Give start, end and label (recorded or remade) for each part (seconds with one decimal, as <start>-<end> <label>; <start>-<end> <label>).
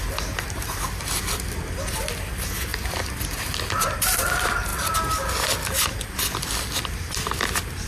0.0-7.9 recorded